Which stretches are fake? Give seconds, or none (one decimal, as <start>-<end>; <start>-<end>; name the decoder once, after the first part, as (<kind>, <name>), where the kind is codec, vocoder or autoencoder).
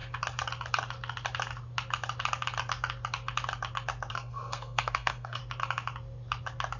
4.1-5.4 (codec, SNAC)